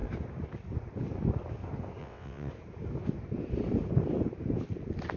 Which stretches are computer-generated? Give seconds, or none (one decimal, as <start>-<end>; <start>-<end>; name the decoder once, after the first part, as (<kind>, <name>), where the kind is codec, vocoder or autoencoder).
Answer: 2.0-2.5 (vocoder, WaveNeXt)

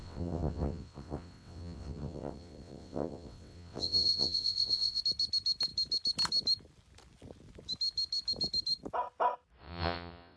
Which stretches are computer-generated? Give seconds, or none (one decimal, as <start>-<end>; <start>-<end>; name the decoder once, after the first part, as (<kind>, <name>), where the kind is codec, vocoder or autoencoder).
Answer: 0.0-5.0 (vocoder, WaveNeXt); 9.6-10.4

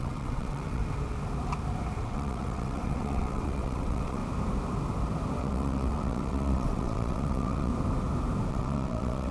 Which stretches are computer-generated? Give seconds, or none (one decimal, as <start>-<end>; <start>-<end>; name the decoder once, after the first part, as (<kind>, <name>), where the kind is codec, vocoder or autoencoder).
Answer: 0.0-0.8 (vocoder, WaveNeXt); 2.0-4.2; 5.4-7.7; 8.5-9.3

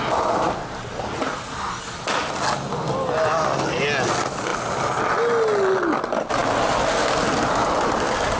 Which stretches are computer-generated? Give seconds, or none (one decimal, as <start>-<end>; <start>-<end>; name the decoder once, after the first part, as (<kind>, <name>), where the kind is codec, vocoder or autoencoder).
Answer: none

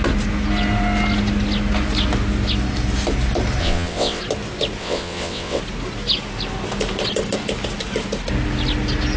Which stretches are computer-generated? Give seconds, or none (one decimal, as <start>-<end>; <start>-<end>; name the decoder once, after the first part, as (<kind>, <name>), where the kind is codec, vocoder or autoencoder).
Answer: 3.6-4.2 (vocoder, WaveNeXt); 4.8-5.6

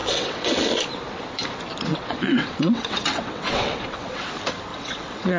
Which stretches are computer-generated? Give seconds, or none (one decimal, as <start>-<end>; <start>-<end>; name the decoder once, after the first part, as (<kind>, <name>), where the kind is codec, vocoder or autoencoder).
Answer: 0.0-0.5 (vocoder, WaveNeXt); 1.9-4.3; 4.7-5.4